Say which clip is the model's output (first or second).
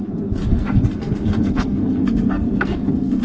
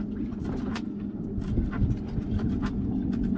first